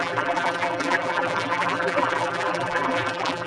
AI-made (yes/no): yes